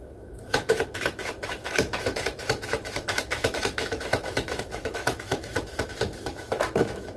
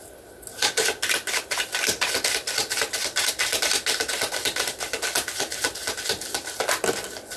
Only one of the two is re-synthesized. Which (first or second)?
first